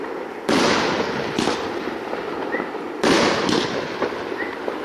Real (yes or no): yes